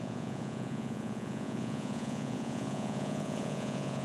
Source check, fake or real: fake